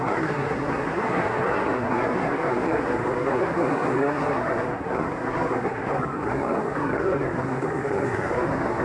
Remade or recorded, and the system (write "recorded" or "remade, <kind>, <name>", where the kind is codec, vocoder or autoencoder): remade, codec, SNAC